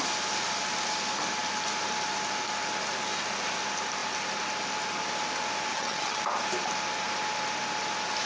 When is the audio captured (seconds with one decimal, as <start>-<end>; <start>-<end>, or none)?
0.0-5.7; 6.2-8.3